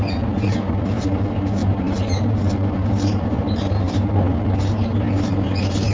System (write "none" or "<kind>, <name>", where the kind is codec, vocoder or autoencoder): vocoder, BigVGAN v2